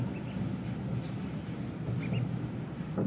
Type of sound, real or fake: real